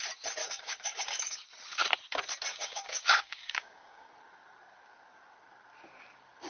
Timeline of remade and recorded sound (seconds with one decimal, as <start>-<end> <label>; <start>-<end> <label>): 0.0-0.4 recorded; 0.4-1.2 remade; 1.2-2.5 recorded; 2.5-4.1 remade; 4.1-6.5 recorded